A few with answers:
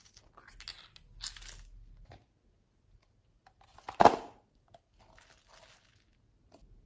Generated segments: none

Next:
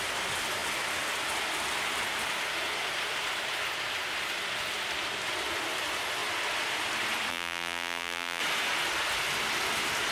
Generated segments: 7.3-8.4 (vocoder, BigVGAN v2)

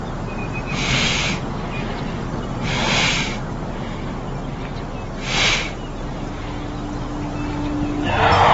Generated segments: 0.4-1.5 (vocoder, Vocos)

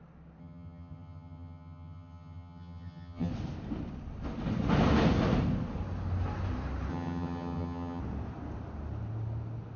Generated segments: 0.4-3.3 (vocoder, HiFi-GAN); 6.9-8.0

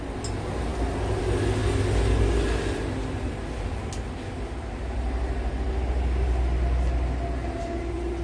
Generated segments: none

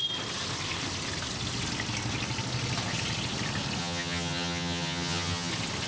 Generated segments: 3.8-5.5 (vocoder, HiFi-GAN)

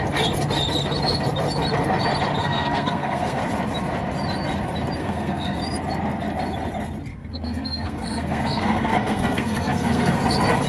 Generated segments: 2.4-3.4 (codec, SNAC); 5.0-5.6; 7.1-10.2

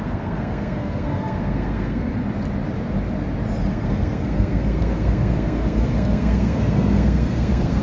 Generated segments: 0.0-2.1 (codec, SNAC); 3.7-7.8